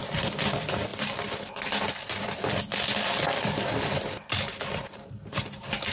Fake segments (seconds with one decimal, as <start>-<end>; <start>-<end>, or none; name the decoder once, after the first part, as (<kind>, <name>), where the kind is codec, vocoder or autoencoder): none